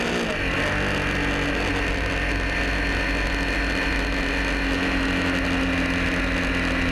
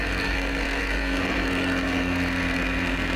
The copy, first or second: second